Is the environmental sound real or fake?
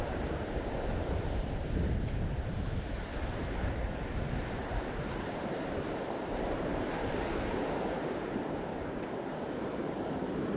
fake